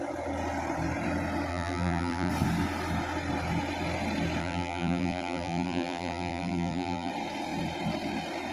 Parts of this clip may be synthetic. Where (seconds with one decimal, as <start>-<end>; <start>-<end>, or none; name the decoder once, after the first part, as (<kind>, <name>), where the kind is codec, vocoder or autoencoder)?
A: 1.5-2.3 (vocoder, BigVGAN v2); 4.4-7.1